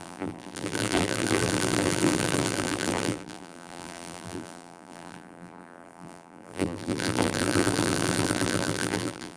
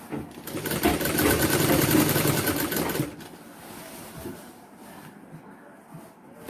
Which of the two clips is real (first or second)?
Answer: second